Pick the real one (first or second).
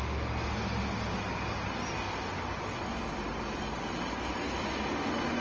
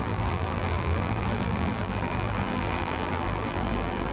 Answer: first